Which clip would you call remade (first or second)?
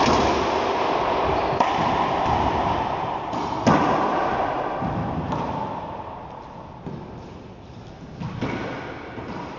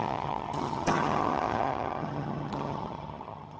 second